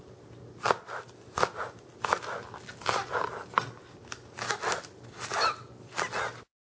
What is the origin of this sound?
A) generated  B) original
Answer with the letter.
B